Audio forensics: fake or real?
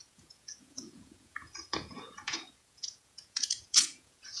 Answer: fake